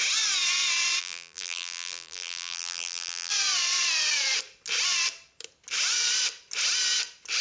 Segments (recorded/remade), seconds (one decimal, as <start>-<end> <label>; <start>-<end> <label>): 0.0-1.0 recorded; 1.0-3.3 remade; 3.3-7.4 recorded